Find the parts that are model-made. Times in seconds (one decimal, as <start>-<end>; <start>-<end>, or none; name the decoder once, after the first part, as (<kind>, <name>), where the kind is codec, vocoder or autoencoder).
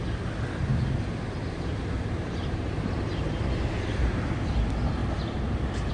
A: 0.7-4.2 (vocoder, BigVGAN v2); 5.0-5.9